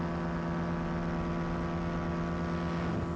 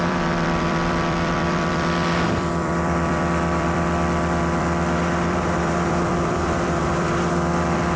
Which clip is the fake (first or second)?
second